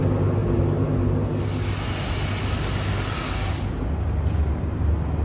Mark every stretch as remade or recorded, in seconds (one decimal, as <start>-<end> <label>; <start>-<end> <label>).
0.0-5.2 recorded